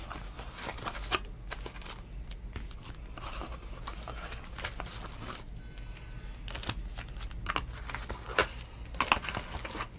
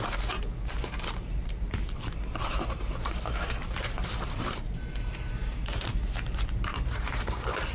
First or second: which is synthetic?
second